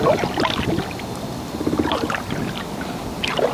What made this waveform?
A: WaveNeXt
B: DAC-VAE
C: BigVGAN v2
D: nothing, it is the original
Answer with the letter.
D